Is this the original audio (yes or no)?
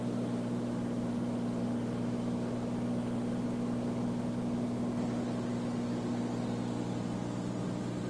yes